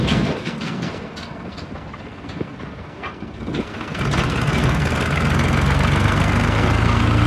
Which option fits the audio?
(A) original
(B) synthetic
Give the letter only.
B